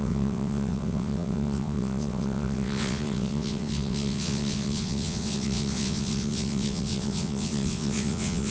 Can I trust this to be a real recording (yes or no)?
no